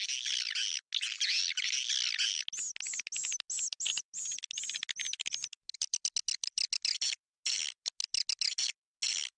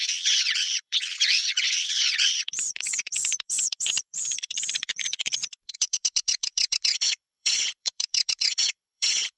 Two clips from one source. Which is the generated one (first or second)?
second